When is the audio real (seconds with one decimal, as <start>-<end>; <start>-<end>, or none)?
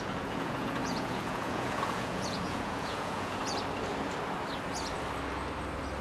3.4-6.0